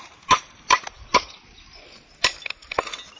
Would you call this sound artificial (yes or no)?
no